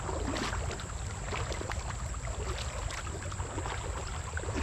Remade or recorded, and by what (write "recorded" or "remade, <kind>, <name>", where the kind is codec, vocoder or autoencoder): recorded